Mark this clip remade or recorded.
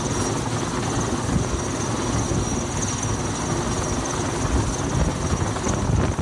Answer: recorded